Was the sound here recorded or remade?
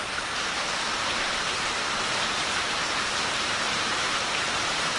remade